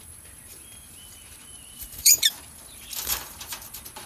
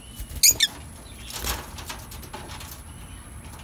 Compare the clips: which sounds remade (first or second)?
first